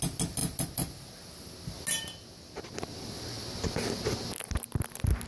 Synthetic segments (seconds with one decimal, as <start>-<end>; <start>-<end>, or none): none